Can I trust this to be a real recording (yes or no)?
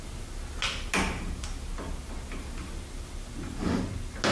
yes